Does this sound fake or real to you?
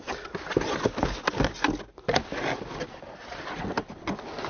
real